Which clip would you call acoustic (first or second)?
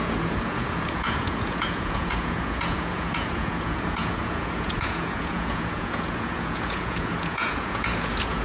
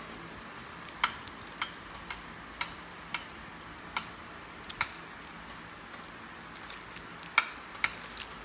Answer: second